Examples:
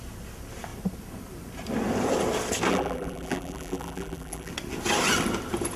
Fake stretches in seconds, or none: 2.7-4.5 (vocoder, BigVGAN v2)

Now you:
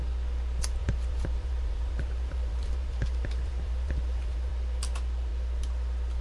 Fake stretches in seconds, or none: 0.8-4.5 (vocoder, BigVGAN v2)

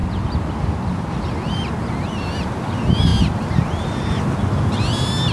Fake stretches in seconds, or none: 3.1-4.2 (vocoder, BigVGAN v2)

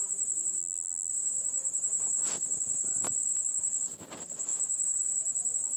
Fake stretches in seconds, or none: 0.6-1.1 (vocoder, BigVGAN v2)

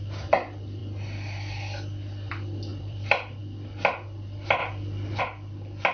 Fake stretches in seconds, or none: 2.7-3.4 (vocoder, BigVGAN v2); 4.6-5.2

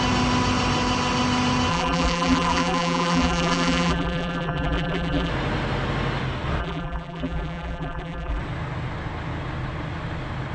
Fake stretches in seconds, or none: 1.7-5.3 (vocoder, BigVGAN v2); 6.6-8.4